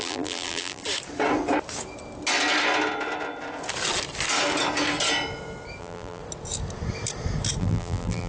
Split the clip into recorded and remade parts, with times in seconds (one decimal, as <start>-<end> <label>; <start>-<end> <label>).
0.0-0.8 remade; 0.8-5.8 recorded; 5.8-6.2 remade; 6.2-7.6 recorded; 7.6-8.3 remade